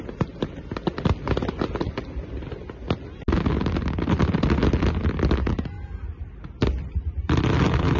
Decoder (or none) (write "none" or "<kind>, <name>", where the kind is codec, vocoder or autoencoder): none